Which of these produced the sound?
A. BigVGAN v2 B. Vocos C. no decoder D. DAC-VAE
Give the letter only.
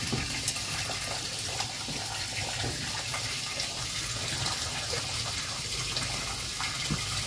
C